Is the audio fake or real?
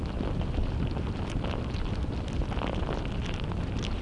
real